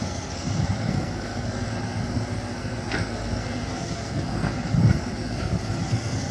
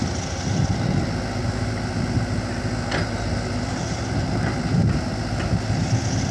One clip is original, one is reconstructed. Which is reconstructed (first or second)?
first